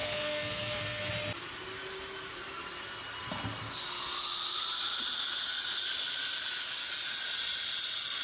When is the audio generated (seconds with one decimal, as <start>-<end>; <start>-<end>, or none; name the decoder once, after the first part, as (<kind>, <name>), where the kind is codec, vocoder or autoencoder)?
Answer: 0.0-1.1 (codec, SNAC)

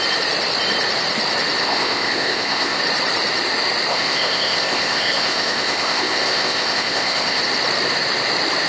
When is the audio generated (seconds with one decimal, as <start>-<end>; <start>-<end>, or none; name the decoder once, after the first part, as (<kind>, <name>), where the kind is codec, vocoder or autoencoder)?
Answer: 1.6-2.8 (codec, ZipCodec); 3.9-7.4

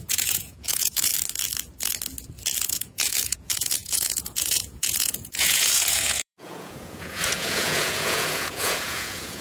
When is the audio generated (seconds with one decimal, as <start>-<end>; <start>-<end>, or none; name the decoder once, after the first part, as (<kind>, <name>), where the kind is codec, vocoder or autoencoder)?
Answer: 0.0-1.1 (vocoder, Vocos); 2.6-9.4

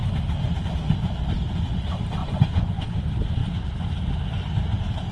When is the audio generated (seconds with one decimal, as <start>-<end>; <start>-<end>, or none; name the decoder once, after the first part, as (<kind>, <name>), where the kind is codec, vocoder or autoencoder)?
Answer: 2.2-3.0 (vocoder, Vocos)

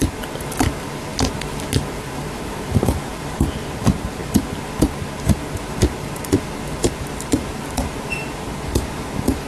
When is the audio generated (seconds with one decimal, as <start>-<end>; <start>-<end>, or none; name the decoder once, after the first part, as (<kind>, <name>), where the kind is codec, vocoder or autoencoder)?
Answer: none